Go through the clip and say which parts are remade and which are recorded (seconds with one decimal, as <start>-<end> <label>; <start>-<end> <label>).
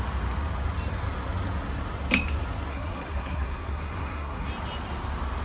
0.0-2.7 recorded; 2.7-4.5 remade; 4.5-5.4 recorded